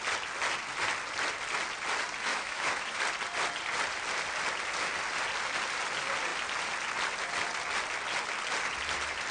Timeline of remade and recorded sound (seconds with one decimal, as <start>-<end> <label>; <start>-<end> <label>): 0.0-2.3 recorded; 2.3-3.0 remade; 3.0-9.3 recorded